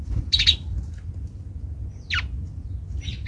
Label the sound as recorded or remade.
recorded